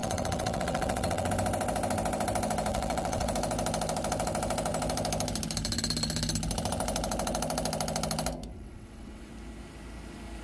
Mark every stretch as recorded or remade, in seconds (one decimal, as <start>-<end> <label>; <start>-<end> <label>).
0.0-1.3 remade; 1.3-2.7 recorded; 2.7-3.3 remade; 3.3-8.5 recorded; 8.5-9.3 remade; 9.3-10.4 recorded